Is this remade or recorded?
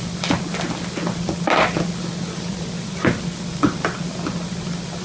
recorded